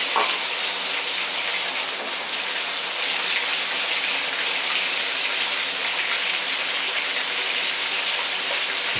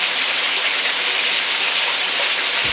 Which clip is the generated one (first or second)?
second